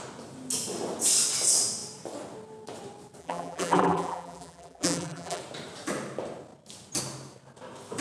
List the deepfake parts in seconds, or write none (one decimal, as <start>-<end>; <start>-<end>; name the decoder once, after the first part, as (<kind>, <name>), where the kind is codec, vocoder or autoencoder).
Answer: 3.2-5.4 (vocoder, BigVGAN v2)